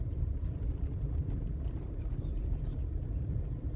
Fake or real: real